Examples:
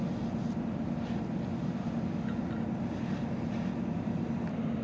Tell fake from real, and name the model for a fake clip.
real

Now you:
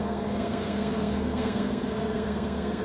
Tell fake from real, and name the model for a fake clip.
fake, codec, SNAC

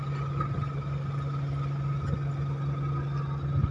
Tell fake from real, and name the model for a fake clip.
real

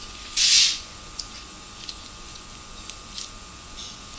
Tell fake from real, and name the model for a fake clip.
fake, vocoder, Vocos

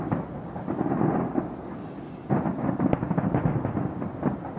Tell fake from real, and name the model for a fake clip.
real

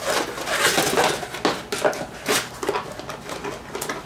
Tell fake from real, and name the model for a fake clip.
real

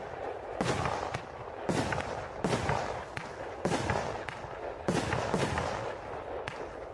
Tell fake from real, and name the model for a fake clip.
real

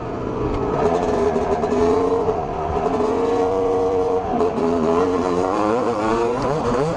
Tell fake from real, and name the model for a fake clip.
fake, vocoder, Vocos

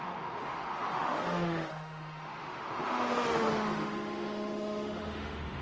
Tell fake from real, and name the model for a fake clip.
fake, autoencoder, DAC-VAE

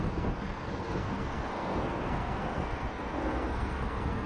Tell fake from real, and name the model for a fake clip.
fake, codec, SNAC